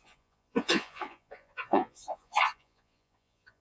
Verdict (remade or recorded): remade